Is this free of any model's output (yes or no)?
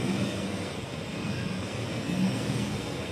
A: no